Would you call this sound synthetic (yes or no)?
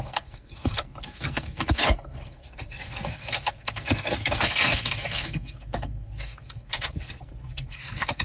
yes